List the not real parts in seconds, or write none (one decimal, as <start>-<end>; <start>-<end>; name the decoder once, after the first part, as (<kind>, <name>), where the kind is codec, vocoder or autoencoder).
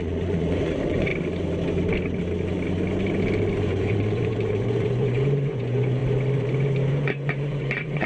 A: 0.0-1.1 (vocoder, Vocos); 3.6-6.0; 6.9-8.1